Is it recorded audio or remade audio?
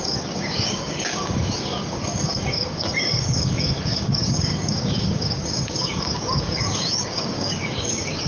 remade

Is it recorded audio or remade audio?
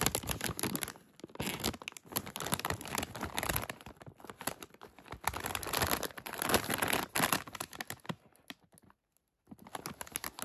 recorded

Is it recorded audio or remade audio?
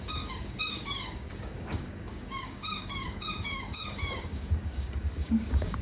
remade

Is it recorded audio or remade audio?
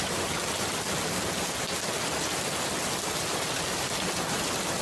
recorded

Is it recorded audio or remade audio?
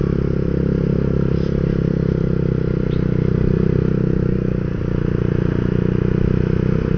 recorded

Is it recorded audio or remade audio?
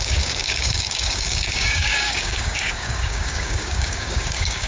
remade